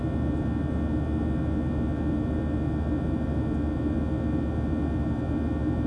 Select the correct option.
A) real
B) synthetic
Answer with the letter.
A